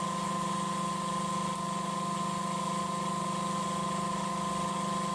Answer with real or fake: real